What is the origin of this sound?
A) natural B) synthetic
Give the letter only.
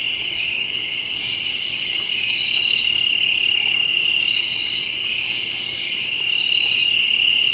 B